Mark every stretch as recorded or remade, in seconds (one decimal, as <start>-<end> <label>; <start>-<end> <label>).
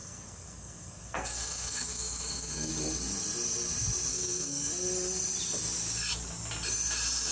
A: 0.0-2.7 remade; 2.7-4.1 recorded; 4.1-4.7 remade; 4.7-7.3 recorded